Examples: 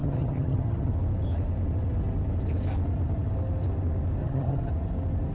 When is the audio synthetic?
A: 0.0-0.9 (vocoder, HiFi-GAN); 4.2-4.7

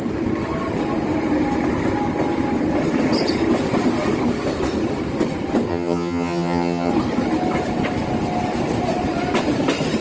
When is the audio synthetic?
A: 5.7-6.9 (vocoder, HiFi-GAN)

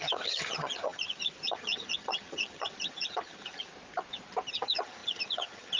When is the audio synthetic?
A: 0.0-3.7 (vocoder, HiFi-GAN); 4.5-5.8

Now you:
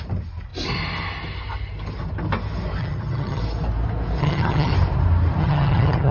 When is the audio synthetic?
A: 2.8-3.4 (vocoder, HiFi-GAN); 4.2-4.7; 5.4-6.1